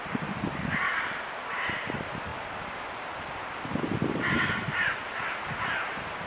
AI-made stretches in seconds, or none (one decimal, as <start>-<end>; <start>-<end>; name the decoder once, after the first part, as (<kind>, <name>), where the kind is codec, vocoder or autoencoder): none